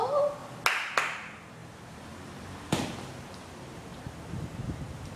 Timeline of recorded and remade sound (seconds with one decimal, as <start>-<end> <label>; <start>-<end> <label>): 0.0-0.4 remade; 0.4-1.0 recorded; 1.0-5.2 remade